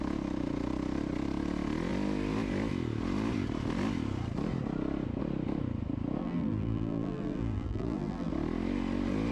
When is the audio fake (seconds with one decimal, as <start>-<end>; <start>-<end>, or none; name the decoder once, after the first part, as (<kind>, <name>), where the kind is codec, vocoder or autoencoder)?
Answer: 6.2-8.3 (vocoder, BigVGAN v2)

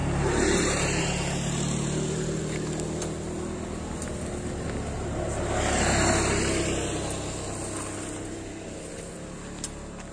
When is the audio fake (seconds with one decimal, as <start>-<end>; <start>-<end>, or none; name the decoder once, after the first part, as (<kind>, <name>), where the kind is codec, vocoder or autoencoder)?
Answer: 0.0-2.4 (vocoder, BigVGAN v2)

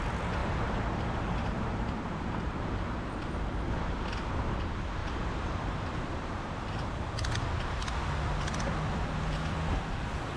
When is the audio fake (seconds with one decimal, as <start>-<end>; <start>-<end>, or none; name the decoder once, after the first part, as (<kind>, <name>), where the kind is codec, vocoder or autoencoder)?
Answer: 0.4-3.2 (vocoder, BigVGAN v2); 5.0-6.9

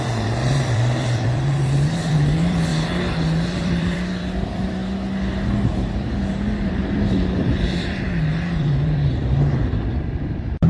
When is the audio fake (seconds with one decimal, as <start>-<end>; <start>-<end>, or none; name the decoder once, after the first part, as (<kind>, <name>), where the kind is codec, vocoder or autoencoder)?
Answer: 0.0-2.7 (vocoder, BigVGAN v2); 3.5-4.8; 6.7-10.7

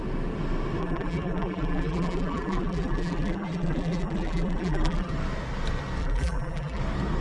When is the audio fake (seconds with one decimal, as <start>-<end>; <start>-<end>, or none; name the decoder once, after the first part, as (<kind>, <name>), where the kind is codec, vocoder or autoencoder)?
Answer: 0.8-5.1 (vocoder, BigVGAN v2); 6.0-6.8

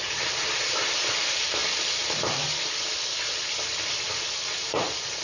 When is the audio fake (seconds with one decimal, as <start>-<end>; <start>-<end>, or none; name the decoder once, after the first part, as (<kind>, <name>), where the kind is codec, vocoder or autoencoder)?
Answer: 0.0-1.6 (vocoder, BigVGAN v2); 4.6-5.2

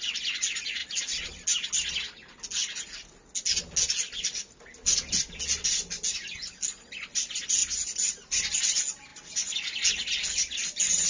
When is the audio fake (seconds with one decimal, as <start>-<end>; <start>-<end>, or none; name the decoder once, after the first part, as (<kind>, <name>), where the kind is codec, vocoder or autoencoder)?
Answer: none

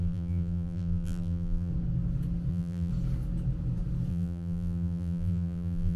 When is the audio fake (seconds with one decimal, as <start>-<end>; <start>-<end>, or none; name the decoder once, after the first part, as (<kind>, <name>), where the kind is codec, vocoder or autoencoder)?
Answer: 0.0-1.7 (vocoder, BigVGAN v2); 2.5-2.9; 4.1-6.0